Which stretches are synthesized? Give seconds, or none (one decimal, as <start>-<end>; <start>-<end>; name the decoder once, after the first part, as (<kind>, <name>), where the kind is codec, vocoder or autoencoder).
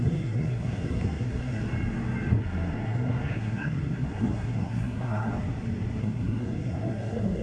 0.0-1.6 (codec, SNAC); 2.4-5.3; 6.0-7.4